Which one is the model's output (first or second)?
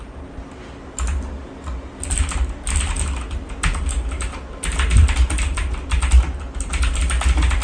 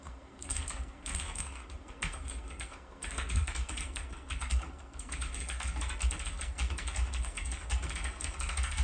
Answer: second